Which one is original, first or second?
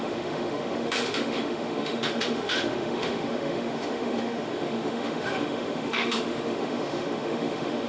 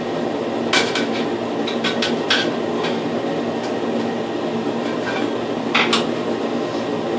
second